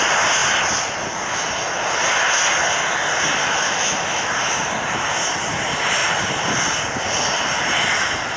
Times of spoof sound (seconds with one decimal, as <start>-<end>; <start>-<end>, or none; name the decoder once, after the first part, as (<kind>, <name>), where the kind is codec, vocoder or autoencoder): 3.4-4.3 (autoencoder, DAC-VAE)

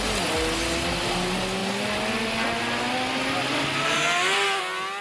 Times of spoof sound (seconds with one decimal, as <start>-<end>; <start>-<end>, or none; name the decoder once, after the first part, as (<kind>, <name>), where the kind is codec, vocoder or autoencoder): none

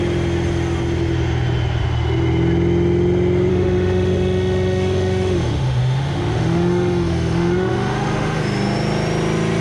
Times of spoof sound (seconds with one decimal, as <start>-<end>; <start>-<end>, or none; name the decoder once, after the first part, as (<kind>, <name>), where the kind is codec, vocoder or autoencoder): 3.5-8.4 (autoencoder, DAC-VAE)

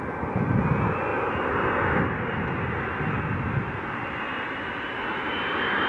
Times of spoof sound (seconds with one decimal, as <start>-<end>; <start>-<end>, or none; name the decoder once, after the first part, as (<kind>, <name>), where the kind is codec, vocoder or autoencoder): none